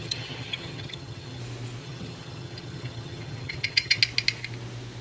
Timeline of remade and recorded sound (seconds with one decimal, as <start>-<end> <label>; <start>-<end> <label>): 0.0-1.4 remade; 1.4-1.8 recorded; 1.8-4.0 remade; 4.0-5.0 recorded